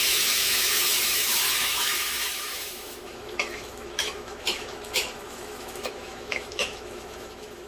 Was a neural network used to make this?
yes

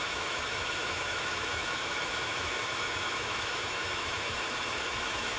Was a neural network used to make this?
yes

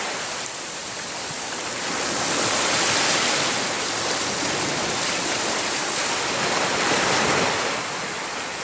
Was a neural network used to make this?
yes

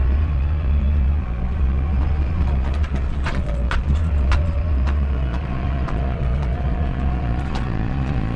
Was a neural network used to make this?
yes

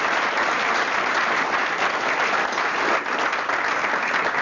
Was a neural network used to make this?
no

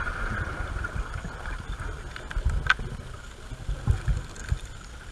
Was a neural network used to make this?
no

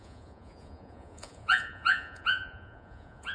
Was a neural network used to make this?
yes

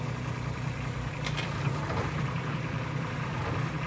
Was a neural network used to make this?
yes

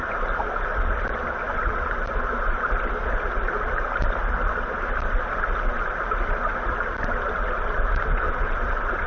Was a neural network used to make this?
no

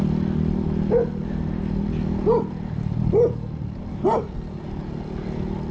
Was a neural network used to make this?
no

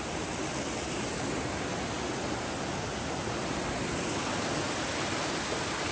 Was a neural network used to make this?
no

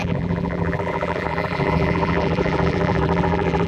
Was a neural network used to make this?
yes